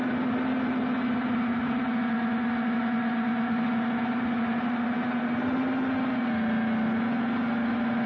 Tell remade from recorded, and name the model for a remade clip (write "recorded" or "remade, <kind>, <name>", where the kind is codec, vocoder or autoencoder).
recorded